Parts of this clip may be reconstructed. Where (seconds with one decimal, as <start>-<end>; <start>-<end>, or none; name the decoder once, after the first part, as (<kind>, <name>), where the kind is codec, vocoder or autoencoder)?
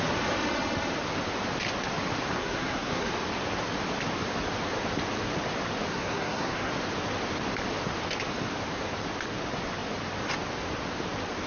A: 2.3-3.1 (codec, SNAC); 5.9-6.7